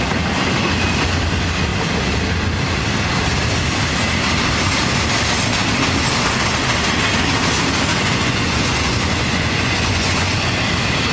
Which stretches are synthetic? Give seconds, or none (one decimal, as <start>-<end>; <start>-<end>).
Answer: 7.9-10.6